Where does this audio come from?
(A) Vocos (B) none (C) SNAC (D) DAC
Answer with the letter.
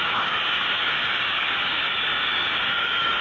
D